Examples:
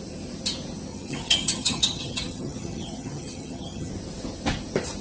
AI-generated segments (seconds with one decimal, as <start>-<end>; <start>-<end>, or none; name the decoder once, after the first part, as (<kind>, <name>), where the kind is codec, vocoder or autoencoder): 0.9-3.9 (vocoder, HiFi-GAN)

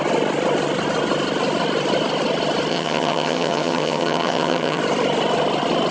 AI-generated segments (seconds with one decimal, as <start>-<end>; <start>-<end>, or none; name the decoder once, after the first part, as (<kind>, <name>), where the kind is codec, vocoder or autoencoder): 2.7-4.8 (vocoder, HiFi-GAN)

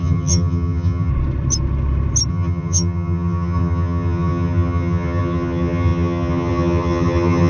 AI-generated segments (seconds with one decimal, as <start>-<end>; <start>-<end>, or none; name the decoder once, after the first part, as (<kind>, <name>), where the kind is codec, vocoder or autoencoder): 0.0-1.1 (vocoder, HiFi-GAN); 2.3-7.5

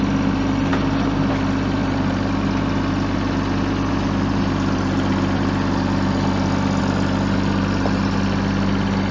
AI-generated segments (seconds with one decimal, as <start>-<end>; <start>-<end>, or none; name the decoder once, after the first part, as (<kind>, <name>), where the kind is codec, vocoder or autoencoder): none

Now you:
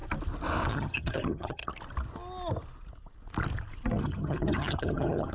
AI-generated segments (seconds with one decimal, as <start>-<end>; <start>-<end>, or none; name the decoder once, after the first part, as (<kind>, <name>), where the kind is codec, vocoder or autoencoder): 0.7-1.6 (vocoder, HiFi-GAN); 4.0-5.3

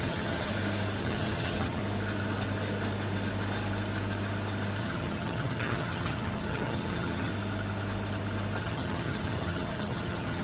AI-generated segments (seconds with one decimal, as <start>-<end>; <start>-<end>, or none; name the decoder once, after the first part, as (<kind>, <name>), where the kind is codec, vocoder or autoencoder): 0.0-0.5 (vocoder, HiFi-GAN); 1.0-1.8; 4.8-7.3; 8.6-10.4

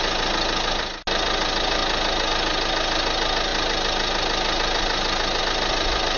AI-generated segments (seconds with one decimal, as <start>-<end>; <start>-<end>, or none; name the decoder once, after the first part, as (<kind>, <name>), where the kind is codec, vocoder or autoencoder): none